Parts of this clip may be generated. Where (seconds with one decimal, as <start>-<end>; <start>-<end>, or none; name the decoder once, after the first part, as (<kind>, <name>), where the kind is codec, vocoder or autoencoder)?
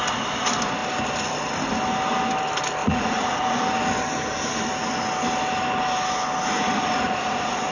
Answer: 2.8-3.6 (vocoder, Vocos); 6.6-7.7